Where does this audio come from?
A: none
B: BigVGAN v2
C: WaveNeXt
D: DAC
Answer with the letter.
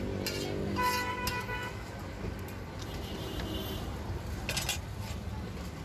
A